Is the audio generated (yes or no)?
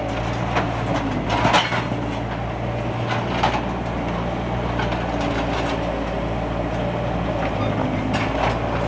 no